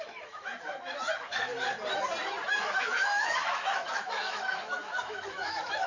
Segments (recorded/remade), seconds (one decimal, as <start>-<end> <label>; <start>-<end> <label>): 0.0-1.5 remade; 1.5-2.5 recorded; 2.5-5.9 remade